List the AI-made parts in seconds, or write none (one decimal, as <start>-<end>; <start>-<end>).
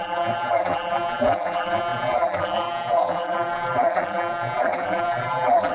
0.0-5.7